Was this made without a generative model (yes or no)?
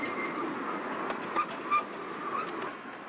yes